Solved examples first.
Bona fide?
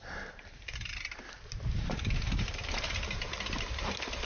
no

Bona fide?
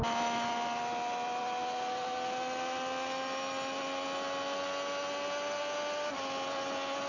yes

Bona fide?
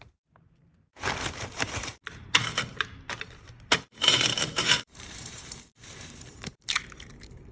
no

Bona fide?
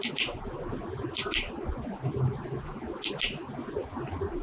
yes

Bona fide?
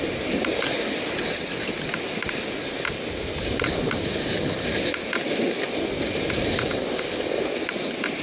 yes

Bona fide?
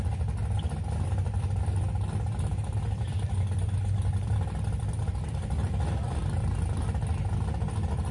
no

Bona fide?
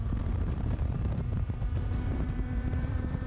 no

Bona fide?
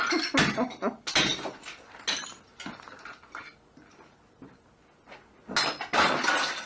yes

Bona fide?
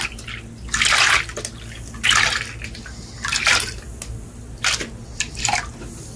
yes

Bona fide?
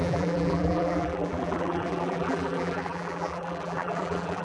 no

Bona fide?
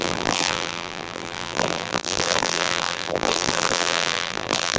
no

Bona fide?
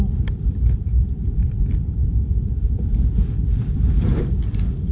yes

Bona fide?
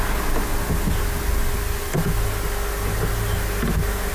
yes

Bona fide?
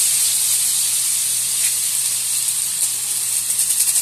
yes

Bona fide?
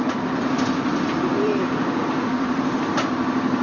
no